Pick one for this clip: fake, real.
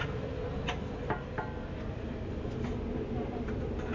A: real